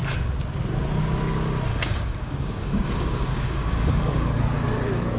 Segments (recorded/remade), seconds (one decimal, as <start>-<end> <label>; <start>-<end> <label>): 0.0-1.7 recorded; 1.7-4.4 remade; 4.4-5.2 recorded